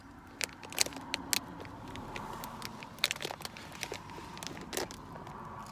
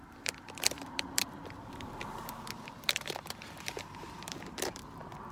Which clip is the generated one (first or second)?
second